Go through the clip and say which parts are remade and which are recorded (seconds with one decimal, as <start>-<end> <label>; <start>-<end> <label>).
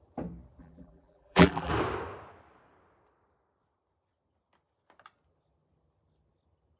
0.0-0.6 recorded; 0.6-1.7 remade; 1.7-6.8 recorded